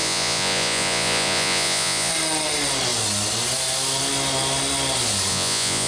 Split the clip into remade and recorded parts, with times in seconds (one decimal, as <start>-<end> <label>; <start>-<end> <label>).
0.0-2.1 remade; 2.1-5.3 recorded; 5.3-5.9 remade